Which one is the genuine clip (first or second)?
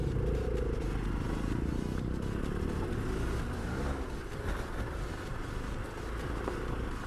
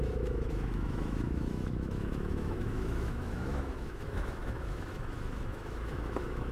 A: first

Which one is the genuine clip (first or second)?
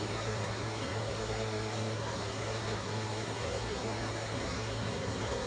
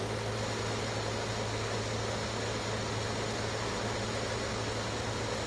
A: second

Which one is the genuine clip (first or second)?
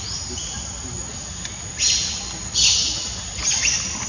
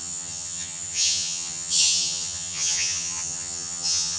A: first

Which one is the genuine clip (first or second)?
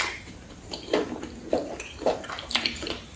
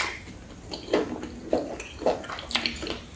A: second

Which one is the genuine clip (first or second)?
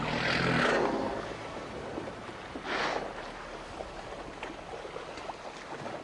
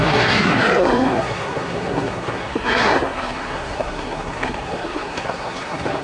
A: first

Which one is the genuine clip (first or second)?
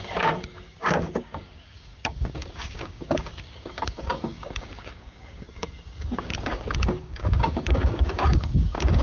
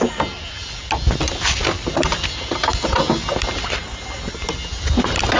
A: second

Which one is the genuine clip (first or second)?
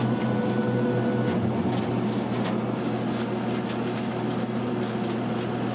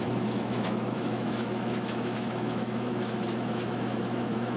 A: first